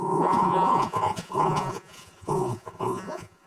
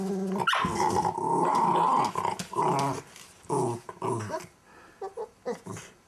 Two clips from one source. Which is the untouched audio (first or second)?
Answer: second